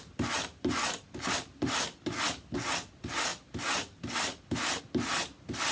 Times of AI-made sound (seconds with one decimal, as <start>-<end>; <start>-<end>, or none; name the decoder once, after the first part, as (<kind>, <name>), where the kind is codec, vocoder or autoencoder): none